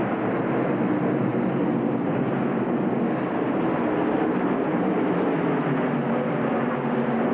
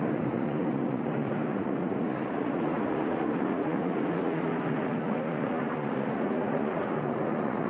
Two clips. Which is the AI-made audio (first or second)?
second